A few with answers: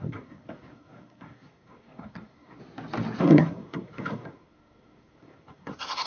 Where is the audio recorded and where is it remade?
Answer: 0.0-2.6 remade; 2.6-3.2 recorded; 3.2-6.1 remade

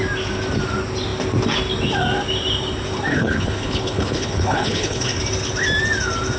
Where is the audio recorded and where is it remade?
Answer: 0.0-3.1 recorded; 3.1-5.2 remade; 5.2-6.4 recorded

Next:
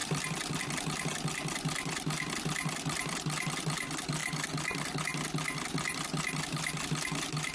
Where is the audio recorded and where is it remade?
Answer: 0.0-7.5 recorded